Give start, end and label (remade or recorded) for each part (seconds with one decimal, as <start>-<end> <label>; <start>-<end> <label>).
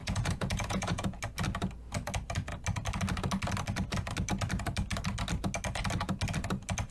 0.0-1.2 remade; 1.2-6.9 recorded